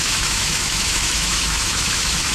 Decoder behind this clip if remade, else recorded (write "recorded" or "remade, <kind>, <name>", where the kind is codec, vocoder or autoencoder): remade, autoencoder, DAC-VAE